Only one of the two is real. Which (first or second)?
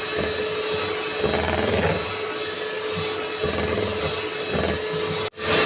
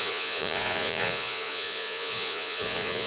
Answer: first